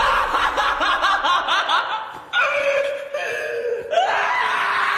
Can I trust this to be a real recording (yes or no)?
yes